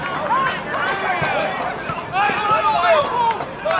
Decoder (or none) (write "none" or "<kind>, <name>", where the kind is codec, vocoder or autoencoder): none